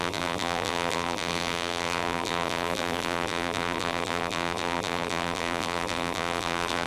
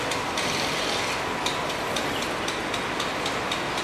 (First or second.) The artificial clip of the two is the first